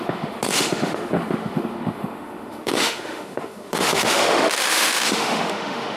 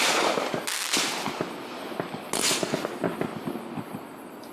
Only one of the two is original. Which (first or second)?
second